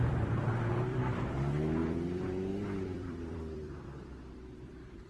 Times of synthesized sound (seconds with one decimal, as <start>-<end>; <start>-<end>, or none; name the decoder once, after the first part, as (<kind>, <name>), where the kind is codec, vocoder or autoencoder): 0.7-5.1 (vocoder, BigVGAN v2)